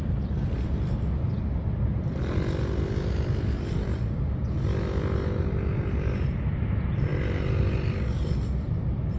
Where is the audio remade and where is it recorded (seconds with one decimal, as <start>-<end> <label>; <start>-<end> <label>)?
0.0-9.2 recorded